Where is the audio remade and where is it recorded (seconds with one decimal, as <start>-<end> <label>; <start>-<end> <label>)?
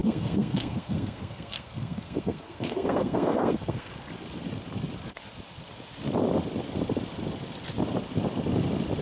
0.0-3.9 remade; 3.9-9.0 recorded